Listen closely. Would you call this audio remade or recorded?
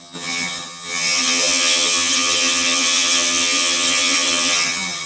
remade